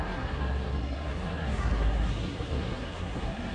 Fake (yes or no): yes